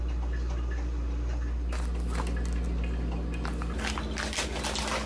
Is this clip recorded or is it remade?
recorded